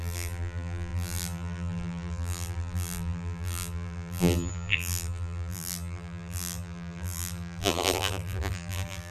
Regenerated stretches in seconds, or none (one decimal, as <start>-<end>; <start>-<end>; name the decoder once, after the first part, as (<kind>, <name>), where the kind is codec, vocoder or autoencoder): 0.0-9.1 (vocoder, BigVGAN v2)